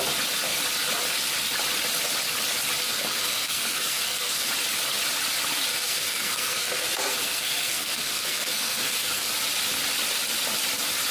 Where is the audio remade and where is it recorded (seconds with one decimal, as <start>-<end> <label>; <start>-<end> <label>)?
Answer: 0.0-2.8 recorded; 2.8-4.5 remade; 4.5-5.7 recorded; 5.7-9.3 remade; 9.3-11.1 recorded